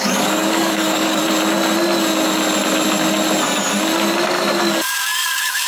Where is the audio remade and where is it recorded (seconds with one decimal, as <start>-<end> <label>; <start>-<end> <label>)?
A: 0.0-1.2 remade; 1.2-4.6 recorded; 4.6-5.7 remade